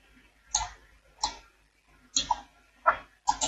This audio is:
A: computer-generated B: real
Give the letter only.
B